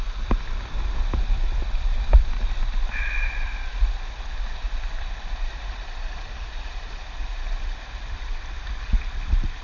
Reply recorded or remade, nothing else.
remade